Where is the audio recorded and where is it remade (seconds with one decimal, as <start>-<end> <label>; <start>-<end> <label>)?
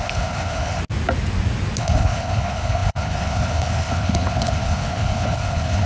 0.0-0.8 remade; 0.8-1.8 recorded; 1.8-5.9 remade